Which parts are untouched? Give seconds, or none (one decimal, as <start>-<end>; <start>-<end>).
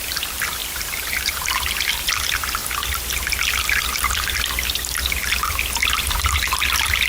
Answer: 0.0-0.6; 2.1-7.1